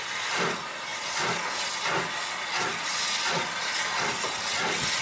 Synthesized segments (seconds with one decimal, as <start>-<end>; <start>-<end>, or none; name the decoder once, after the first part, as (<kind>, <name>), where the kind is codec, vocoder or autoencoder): none

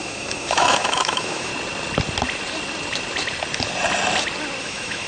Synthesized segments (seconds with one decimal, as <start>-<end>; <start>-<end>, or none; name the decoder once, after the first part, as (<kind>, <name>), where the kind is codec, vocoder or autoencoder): 0.0-1.5 (autoencoder, DAC-VAE); 4.6-5.1

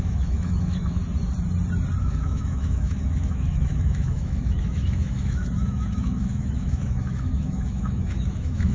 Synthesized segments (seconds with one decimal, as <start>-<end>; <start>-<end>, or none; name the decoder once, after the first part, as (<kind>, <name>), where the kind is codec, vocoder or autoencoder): 0.0-1.0 (autoencoder, DAC-VAE); 2.0-8.7

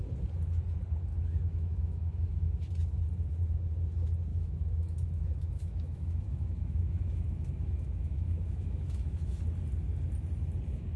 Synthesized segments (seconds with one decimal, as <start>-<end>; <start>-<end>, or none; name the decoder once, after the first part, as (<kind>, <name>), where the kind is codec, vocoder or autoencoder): 1.1-2.7 (autoencoder, DAC-VAE); 4.3-9.4

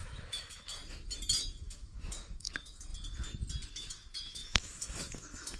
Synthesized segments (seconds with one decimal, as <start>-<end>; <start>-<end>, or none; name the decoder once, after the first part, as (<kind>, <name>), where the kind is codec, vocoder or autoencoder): 0.0-0.8 (autoencoder, DAC-VAE); 1.6-2.9; 3.7-5.6

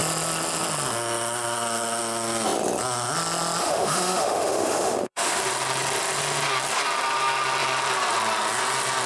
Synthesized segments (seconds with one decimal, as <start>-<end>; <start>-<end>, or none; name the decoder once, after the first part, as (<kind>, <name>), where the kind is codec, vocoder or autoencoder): 3.6-5.4 (autoencoder, DAC-VAE)

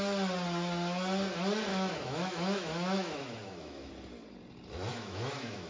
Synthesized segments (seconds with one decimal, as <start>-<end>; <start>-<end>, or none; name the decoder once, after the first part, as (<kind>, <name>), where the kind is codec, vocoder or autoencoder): 1.7-3.9 (autoencoder, DAC-VAE); 4.9-5.7

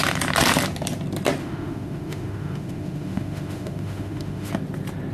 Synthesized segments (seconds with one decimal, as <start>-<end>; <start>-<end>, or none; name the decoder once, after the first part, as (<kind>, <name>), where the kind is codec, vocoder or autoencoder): 1.4-4.5 (autoencoder, DAC-VAE)